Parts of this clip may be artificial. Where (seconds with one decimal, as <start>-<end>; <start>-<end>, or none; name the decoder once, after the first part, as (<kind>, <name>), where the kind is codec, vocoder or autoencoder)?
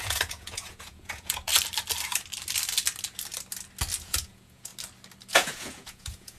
0.0-1.5 (vocoder, Vocos); 4.0-4.7; 5.3-6.4